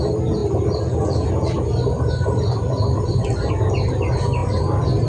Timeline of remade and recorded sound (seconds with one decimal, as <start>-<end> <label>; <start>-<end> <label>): 0.0-5.1 recorded